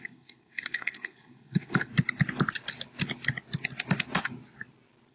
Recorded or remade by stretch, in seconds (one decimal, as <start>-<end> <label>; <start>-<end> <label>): 0.0-1.9 remade; 1.9-5.1 recorded